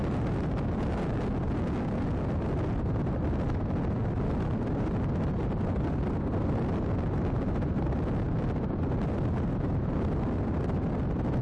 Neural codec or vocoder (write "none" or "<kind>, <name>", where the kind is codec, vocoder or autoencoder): none